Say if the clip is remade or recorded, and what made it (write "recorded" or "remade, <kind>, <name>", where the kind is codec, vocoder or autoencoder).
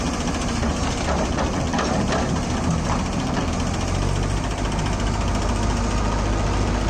recorded